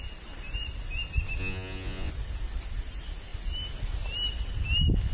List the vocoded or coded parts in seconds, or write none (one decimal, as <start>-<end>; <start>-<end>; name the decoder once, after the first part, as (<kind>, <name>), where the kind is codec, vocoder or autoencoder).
1.4-2.1 (vocoder, Vocos)